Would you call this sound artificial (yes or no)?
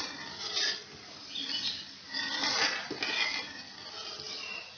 no